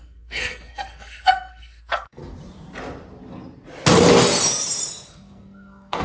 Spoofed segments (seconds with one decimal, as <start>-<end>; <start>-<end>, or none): 0.0-2.2; 5.1-6.0